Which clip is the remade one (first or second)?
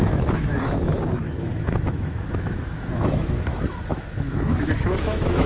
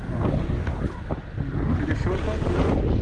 first